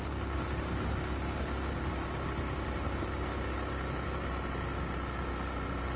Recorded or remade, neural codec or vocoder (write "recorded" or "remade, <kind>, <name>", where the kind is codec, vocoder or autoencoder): recorded